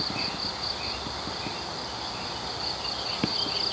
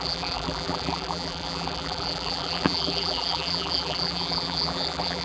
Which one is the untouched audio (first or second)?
first